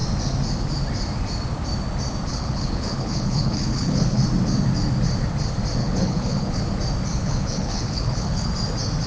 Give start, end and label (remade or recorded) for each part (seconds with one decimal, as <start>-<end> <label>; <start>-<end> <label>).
0.0-2.3 recorded; 2.3-4.2 remade; 4.2-5.8 recorded; 5.8-6.6 remade; 6.6-7.2 recorded; 7.2-8.5 remade; 8.5-9.1 recorded